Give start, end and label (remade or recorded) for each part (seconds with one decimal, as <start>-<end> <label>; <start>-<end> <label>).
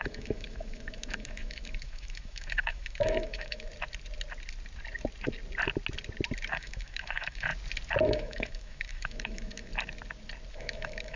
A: 0.0-3.7 remade; 3.7-6.5 recorded; 6.5-7.5 remade; 7.5-8.0 recorded; 8.0-9.7 remade; 9.7-10.5 recorded; 10.5-11.2 remade